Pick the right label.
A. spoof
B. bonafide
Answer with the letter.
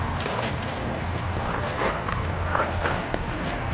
A